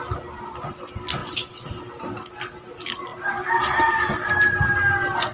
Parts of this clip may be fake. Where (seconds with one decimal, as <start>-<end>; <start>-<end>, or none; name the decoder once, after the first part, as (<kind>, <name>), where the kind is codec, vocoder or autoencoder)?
1.2-2.0 (vocoder, BigVGAN v2); 3.1-4.1